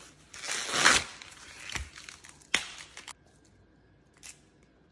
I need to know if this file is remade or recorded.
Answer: recorded